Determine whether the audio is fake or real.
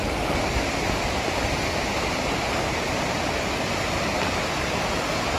real